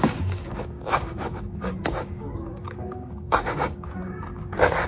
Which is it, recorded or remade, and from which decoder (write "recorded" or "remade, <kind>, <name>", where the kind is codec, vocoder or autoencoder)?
remade, codec, DAC